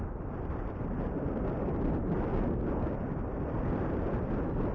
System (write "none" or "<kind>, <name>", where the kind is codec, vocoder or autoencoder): none